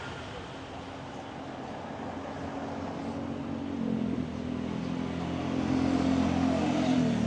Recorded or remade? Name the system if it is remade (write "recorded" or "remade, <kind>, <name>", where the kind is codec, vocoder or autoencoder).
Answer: recorded